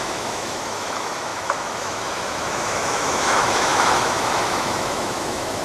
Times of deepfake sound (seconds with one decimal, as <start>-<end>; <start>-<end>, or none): 0.0-5.6